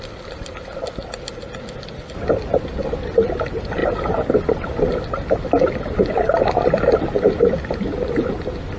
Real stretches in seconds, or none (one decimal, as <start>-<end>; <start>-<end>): 0.0-8.8